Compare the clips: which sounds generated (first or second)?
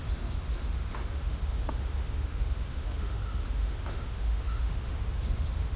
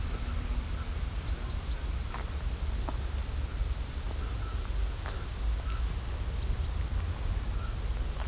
first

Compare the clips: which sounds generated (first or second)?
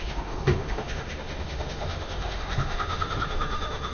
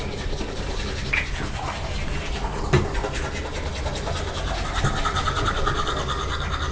first